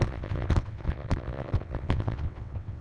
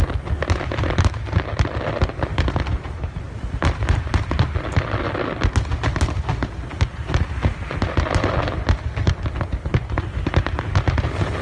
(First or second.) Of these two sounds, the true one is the second